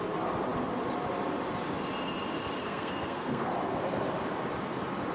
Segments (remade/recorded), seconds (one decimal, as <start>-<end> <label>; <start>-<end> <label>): 0.0-2.6 recorded; 2.6-3.5 remade; 3.5-5.1 recorded